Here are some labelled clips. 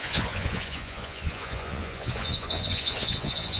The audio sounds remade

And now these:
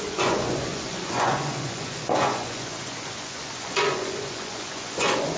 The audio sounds remade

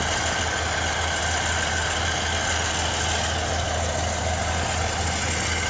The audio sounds recorded